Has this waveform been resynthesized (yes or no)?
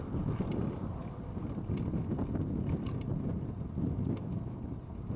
no